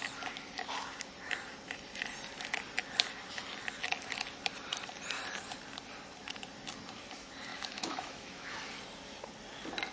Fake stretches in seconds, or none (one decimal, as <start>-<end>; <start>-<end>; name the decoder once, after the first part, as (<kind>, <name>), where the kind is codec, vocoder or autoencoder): 7.5-8.6 (autoencoder, DAC-VAE)